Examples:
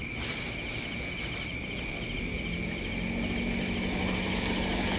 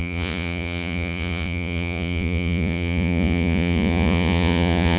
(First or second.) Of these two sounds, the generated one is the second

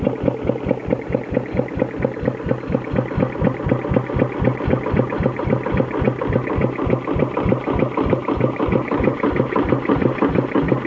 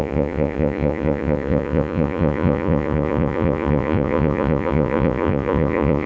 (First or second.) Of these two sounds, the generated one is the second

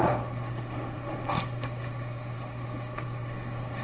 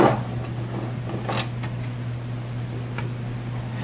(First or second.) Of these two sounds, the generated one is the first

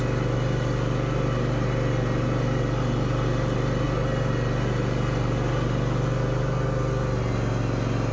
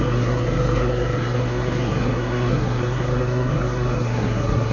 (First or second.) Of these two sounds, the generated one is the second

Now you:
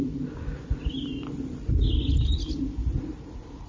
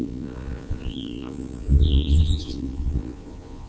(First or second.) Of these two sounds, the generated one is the second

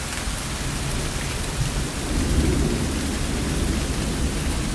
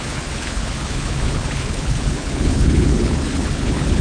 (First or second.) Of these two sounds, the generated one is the second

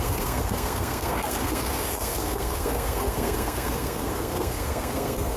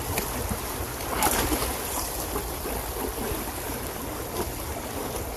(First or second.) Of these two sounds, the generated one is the first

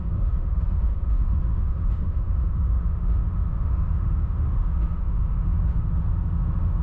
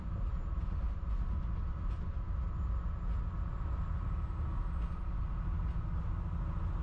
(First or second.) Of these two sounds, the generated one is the first